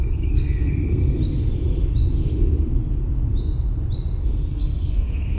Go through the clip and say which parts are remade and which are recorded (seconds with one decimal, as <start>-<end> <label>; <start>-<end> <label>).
0.0-1.0 remade; 1.0-4.2 recorded; 4.2-5.4 remade